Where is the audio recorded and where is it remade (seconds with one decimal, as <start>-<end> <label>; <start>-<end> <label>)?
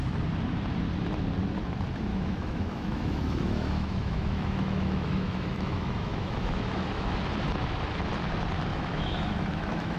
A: 0.0-2.1 recorded; 2.1-7.2 remade; 7.2-8.7 recorded; 8.7-10.0 remade